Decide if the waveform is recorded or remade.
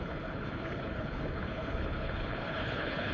remade